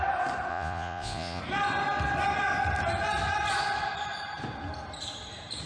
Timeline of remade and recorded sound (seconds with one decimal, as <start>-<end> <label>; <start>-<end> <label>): 0.0-0.5 recorded; 0.5-1.4 remade; 1.4-5.7 recorded